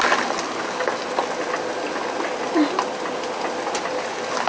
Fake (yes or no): no